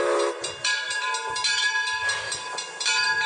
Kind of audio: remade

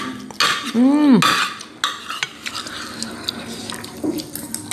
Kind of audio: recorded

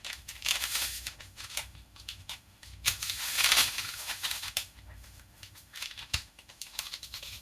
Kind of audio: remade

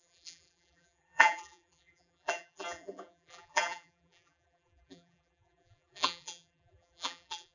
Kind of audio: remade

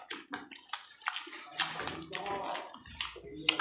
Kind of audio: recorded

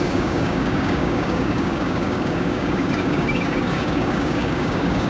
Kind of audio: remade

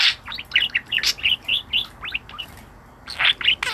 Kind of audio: recorded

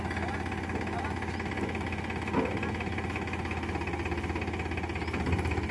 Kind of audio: recorded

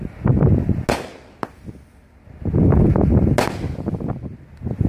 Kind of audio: recorded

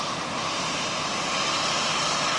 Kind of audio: recorded